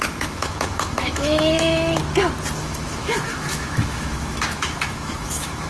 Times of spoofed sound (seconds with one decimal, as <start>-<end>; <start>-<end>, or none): 0.0-2.0; 2.6-5.7